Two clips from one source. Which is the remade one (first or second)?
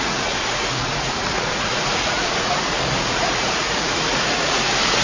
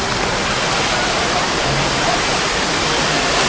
first